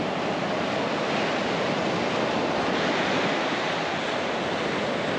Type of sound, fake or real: real